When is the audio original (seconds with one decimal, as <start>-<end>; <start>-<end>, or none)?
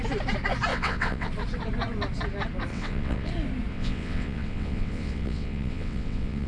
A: 0.0-0.7; 1.3-2.7; 3.3-3.7